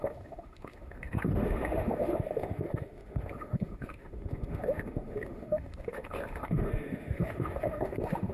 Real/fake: fake